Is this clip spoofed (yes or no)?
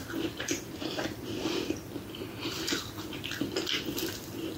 no